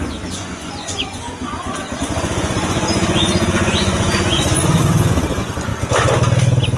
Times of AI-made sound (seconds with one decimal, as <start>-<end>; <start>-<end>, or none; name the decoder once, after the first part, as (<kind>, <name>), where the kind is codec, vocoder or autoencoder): 0.0-5.7 (vocoder, Vocos)